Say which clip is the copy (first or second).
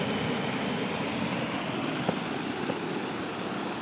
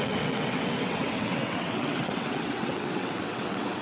second